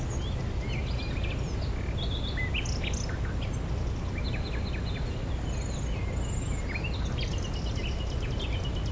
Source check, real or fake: real